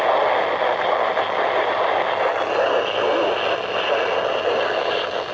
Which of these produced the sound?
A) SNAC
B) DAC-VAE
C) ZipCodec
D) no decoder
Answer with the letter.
D